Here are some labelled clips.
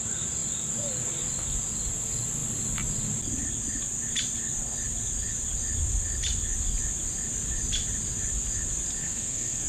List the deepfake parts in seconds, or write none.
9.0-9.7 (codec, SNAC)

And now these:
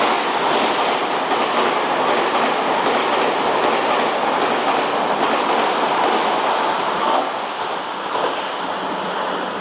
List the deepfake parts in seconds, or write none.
7.0-7.5 (codec, SNAC)

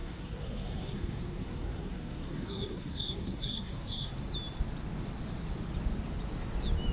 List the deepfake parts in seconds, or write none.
0.0-4.1 (codec, SNAC)

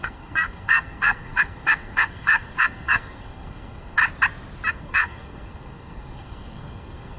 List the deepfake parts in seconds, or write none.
0.0-4.0 (codec, SNAC); 4.7-7.2